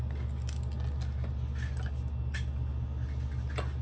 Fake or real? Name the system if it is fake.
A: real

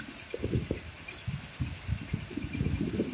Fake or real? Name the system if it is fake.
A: real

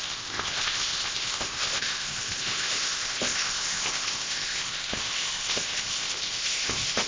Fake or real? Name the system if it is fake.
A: fake, codec, ZipCodec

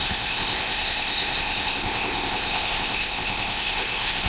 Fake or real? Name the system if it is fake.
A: fake, codec, ZipCodec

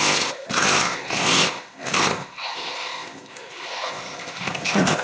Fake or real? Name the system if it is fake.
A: fake, codec, ZipCodec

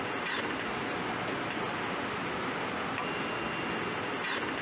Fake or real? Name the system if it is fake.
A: real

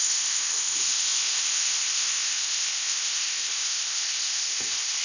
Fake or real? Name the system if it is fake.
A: fake, codec, ZipCodec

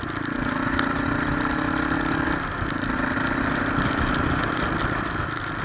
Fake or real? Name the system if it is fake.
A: real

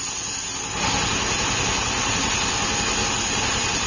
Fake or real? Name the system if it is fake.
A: real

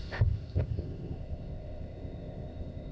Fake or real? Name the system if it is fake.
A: fake, codec, ZipCodec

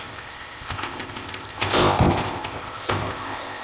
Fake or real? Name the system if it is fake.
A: fake, codec, ZipCodec